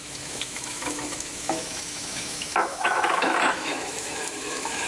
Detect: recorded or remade remade